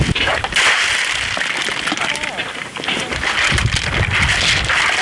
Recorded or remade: recorded